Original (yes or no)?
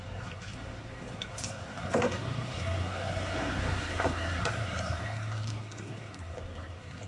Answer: no